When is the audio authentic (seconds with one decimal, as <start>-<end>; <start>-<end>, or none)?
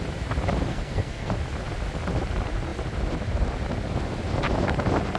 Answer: 0.0-0.7; 1.3-5.2